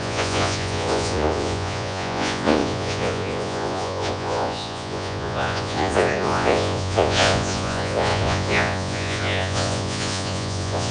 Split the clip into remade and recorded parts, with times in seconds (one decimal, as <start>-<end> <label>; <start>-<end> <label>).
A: 0.0-10.9 remade